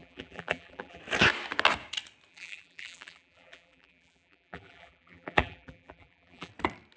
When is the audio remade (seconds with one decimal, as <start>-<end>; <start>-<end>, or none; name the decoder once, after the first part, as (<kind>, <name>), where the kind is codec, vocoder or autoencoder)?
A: 0.0-1.0 (vocoder, BigVGAN v2); 2.3-6.5